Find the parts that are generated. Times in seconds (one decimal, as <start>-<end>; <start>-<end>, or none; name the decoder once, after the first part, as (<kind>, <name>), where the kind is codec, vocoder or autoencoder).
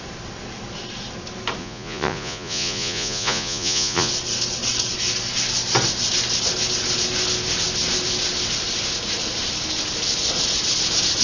1.6-4.1 (vocoder, Vocos)